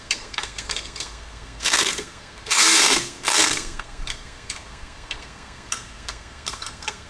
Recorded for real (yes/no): no